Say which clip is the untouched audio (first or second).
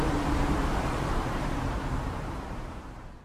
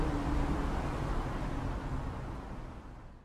second